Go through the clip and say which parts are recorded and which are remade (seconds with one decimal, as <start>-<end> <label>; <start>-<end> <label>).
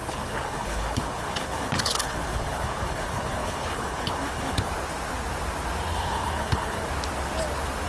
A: 0.0-4.7 remade; 4.7-5.9 recorded; 5.9-6.9 remade; 6.9-7.9 recorded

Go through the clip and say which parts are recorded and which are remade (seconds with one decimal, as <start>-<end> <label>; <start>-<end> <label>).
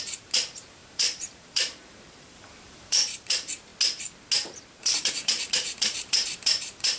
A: 0.0-3.7 remade; 3.7-4.6 recorded; 4.6-7.0 remade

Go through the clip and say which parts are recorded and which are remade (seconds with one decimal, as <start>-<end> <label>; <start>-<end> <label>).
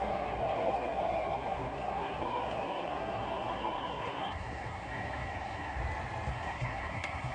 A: 0.0-5.8 remade; 5.8-6.3 recorded; 6.3-7.3 remade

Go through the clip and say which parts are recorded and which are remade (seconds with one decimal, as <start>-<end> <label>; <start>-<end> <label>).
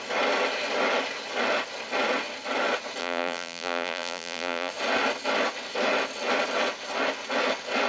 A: 0.0-3.0 recorded; 3.0-4.7 remade; 4.7-7.9 recorded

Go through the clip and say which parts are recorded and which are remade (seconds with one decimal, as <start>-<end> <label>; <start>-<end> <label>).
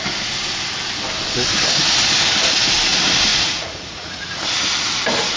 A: 0.0-3.3 recorded; 3.3-4.4 remade; 4.4-5.4 recorded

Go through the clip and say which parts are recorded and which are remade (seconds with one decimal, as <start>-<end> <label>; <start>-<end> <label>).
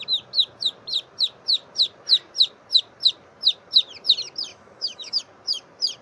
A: 0.0-4.5 recorded; 4.5-5.2 remade; 5.2-6.0 recorded